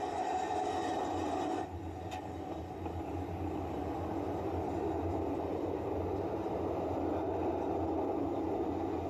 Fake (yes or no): no